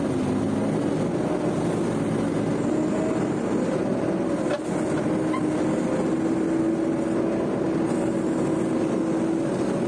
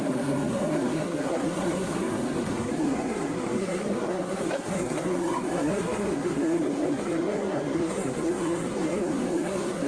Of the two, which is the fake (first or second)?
second